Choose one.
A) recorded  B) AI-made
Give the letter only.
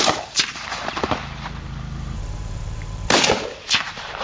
B